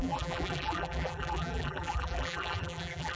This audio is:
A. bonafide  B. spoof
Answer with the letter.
B